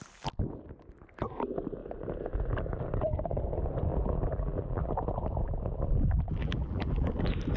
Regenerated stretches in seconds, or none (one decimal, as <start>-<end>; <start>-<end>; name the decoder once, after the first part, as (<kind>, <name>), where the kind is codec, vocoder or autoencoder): 3.9-4.9 (vocoder, BigVGAN v2); 6.4-7.1